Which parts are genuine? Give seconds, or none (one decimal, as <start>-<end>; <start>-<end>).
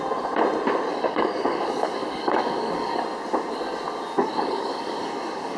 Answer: 0.0-0.9; 3.0-4.2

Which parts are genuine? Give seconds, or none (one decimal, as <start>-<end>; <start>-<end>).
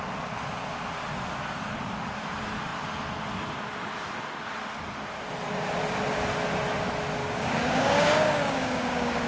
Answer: 0.0-7.2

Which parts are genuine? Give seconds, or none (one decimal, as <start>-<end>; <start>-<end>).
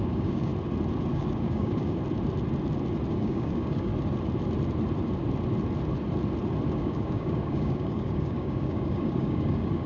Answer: 0.5-1.1; 2.0-3.1; 3.9-6.7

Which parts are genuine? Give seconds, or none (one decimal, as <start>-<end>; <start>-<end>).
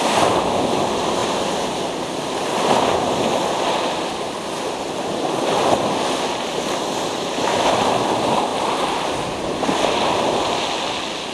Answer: 0.0-11.3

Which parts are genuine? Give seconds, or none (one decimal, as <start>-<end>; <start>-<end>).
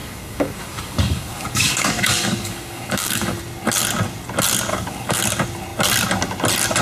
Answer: 3.4-4.7; 5.2-6.8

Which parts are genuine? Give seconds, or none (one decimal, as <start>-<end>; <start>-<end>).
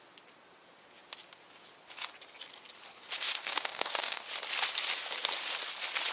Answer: 0.0-3.3; 4.2-6.1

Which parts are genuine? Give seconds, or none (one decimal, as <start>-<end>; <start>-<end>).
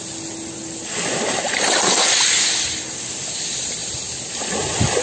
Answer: 0.0-5.0